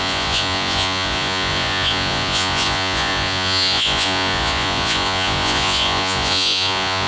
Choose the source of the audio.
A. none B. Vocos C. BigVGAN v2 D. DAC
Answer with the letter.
B